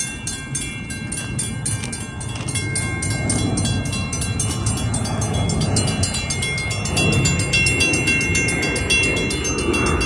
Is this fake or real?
real